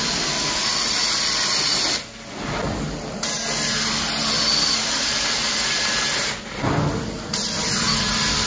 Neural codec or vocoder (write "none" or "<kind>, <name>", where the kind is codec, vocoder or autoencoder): none